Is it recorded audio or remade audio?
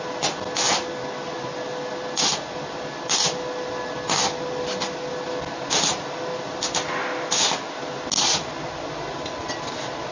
recorded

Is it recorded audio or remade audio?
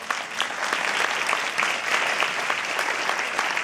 recorded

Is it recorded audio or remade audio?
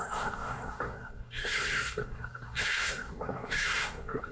remade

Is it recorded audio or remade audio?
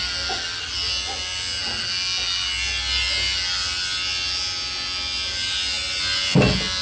recorded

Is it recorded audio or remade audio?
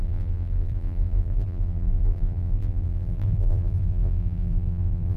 remade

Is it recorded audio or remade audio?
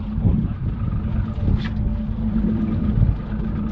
recorded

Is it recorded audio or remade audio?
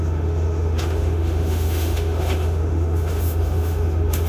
remade